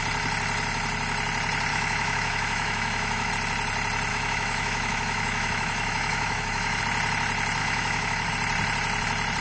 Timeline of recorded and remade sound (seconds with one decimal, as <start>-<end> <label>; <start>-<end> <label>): 0.0-1.7 recorded; 1.7-3.3 remade; 3.3-4.1 recorded; 4.1-6.8 remade; 6.8-7.6 recorded; 7.6-8.3 remade; 8.3-9.4 recorded